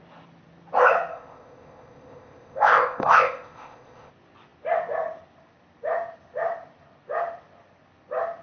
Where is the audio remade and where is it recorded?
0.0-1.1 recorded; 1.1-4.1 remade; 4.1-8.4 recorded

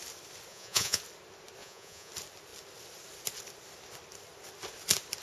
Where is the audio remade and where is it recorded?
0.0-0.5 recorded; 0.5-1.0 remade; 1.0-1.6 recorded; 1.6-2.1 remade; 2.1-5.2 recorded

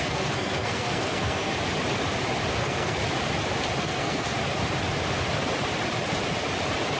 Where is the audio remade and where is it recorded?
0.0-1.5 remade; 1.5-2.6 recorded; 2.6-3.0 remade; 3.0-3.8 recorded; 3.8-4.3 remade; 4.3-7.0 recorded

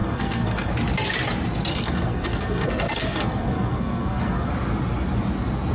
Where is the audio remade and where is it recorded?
0.0-0.7 remade; 0.7-1.7 recorded; 1.7-4.5 remade; 4.5-5.7 recorded